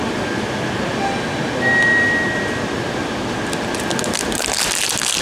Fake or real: real